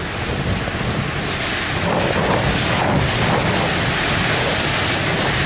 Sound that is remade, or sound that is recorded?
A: recorded